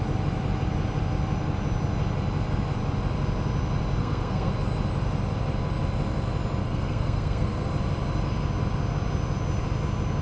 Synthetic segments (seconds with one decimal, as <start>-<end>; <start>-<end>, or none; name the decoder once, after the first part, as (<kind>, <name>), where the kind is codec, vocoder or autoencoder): 4.0-4.5 (codec, SNAC); 6.6-7.7